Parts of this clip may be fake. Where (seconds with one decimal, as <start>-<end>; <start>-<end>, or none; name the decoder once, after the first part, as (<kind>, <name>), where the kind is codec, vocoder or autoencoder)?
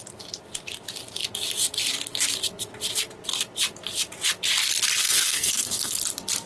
5.0-6.0 (codec, SNAC)